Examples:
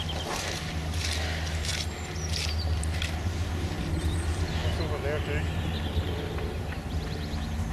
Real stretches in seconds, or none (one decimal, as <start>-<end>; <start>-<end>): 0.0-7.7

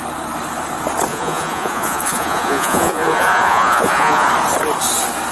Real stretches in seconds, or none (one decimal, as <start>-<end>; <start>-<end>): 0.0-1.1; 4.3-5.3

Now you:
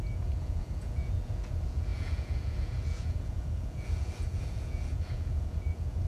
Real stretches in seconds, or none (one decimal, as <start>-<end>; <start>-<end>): none